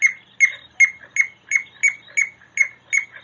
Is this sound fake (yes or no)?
no